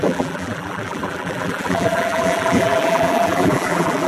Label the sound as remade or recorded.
remade